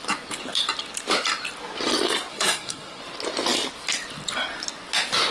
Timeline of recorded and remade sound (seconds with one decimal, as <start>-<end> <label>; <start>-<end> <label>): 0.0-2.3 recorded; 2.3-3.0 remade; 3.0-5.3 recorded